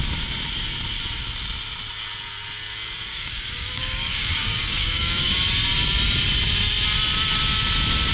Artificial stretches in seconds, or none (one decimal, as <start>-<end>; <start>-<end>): 3.1-5.3